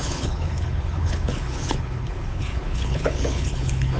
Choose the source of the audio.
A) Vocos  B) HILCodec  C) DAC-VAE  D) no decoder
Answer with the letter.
B